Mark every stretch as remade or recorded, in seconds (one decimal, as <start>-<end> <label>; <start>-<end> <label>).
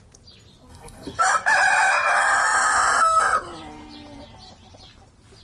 0.0-0.7 recorded; 0.7-1.2 remade; 1.2-5.4 recorded